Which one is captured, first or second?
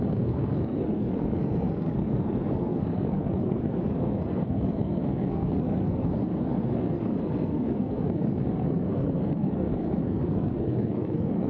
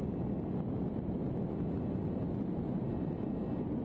second